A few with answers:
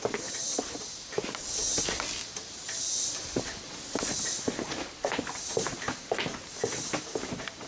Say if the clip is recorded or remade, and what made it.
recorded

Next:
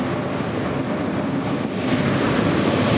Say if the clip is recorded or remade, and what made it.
recorded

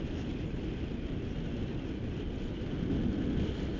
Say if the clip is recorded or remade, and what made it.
recorded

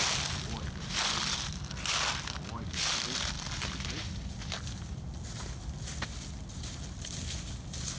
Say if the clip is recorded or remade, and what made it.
recorded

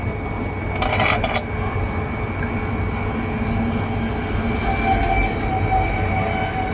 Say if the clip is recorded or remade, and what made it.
recorded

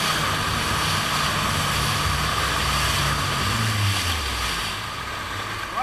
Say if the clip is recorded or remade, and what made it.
recorded